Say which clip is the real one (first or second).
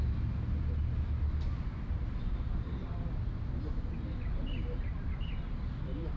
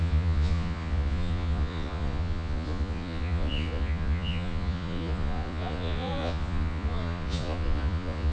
first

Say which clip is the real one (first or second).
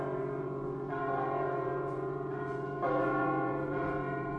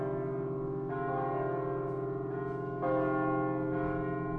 second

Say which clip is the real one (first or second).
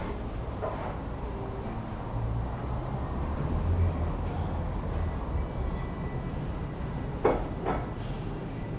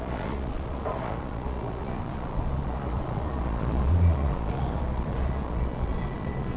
first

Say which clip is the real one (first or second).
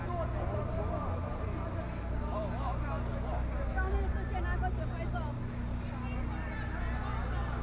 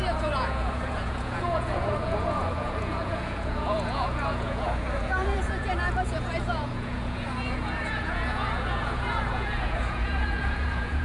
first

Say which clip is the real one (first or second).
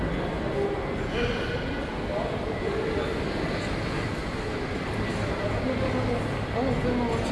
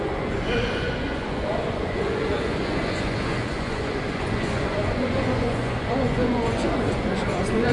first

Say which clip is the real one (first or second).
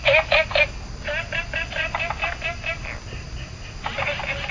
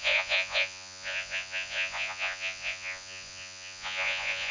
first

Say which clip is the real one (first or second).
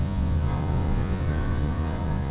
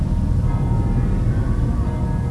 second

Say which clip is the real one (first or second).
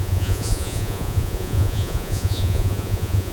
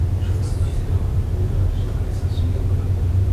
second